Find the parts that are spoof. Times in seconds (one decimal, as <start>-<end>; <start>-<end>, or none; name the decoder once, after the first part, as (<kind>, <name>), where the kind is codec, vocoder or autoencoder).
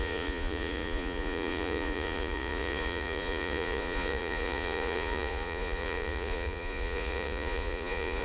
0.0-8.2 (vocoder, Vocos)